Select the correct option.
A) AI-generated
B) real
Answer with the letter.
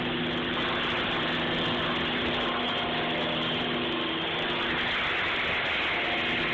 B